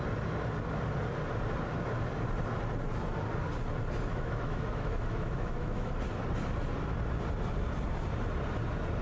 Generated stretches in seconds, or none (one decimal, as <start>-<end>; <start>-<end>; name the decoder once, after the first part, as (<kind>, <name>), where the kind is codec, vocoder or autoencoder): 4.1-5.9 (autoencoder, DAC-VAE)